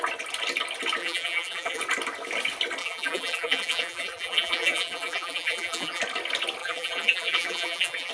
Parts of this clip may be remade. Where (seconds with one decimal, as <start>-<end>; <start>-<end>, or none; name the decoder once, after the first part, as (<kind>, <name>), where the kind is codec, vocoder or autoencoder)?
1.0-1.8 (vocoder, BigVGAN v2); 2.8-6.0; 6.6-8.1